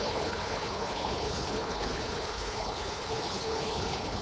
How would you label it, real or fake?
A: fake